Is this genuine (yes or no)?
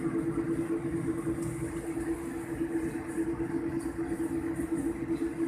yes